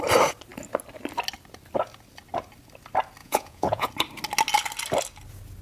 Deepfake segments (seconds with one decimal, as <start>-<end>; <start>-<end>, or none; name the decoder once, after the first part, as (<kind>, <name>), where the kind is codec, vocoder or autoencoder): 3.2-3.9 (vocoder, Vocos)